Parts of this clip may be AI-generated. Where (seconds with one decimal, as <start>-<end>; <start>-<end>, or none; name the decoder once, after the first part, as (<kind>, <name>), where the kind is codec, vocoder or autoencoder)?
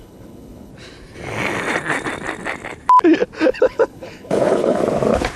0.0-0.7 (codec, HILCodec); 3.5-4.8